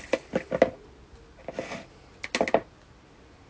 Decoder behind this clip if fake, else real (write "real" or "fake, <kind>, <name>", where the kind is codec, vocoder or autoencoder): real